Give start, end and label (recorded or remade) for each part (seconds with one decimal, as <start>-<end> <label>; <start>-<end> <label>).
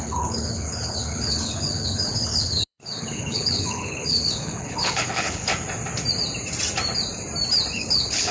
0.0-5.5 remade; 5.5-7.7 recorded; 7.7-8.3 remade